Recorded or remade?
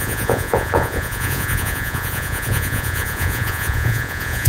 remade